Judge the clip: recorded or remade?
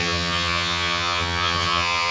remade